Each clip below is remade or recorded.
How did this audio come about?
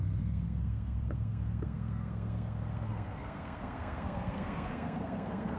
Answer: remade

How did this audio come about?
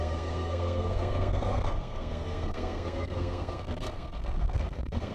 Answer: remade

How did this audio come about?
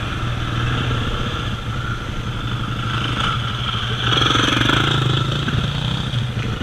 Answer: recorded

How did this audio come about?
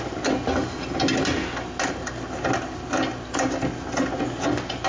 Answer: recorded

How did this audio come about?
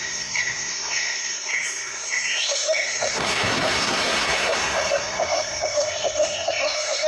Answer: remade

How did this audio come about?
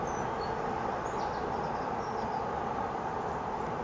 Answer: recorded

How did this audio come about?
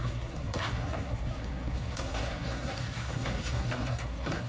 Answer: remade